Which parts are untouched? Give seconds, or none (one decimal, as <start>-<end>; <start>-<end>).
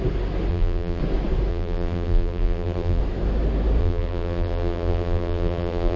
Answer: 0.0-0.5; 1.0-1.5; 3.0-3.8